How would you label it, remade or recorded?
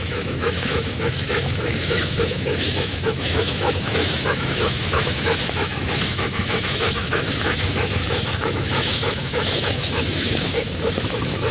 remade